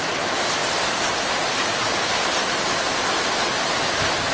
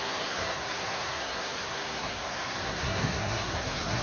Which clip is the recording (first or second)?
first